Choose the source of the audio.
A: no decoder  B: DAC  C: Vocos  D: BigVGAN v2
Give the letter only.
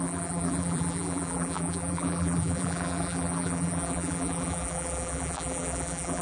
D